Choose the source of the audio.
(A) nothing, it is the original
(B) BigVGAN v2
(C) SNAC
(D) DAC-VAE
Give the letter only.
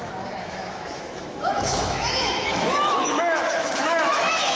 D